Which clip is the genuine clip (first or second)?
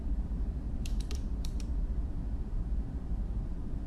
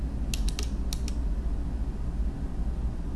second